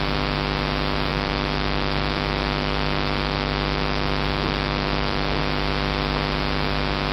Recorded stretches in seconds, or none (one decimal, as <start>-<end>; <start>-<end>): 0.0-1.1; 5.4-7.1